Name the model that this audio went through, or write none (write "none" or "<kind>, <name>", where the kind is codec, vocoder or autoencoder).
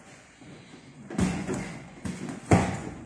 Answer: vocoder, Vocos